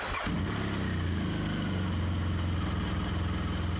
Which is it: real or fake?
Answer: real